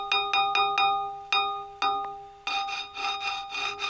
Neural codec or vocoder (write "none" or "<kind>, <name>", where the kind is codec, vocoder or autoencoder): none